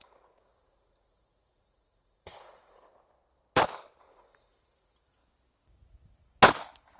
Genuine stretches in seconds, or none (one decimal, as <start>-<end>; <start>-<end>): 2.9-4.1; 5.2-7.0